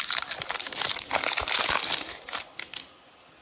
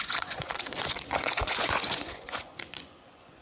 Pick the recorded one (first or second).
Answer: first